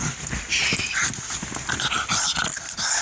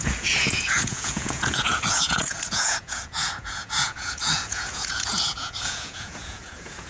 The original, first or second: first